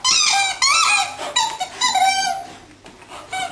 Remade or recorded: recorded